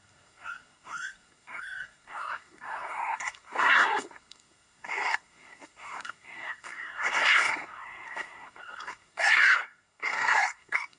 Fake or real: fake